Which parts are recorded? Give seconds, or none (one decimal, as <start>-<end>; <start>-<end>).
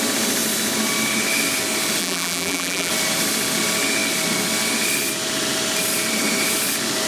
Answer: 0.0-2.0; 2.9-7.1